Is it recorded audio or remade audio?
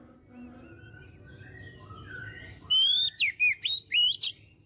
recorded